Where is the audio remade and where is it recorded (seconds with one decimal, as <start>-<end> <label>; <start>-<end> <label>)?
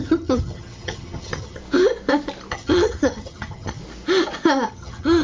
0.0-1.6 remade; 1.6-2.5 recorded; 2.5-3.8 remade; 3.8-4.7 recorded; 4.7-5.2 remade